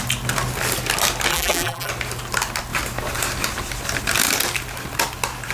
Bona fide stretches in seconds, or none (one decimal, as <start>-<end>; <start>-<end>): 0.0-1.3; 1.9-5.5